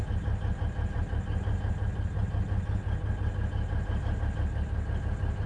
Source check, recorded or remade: recorded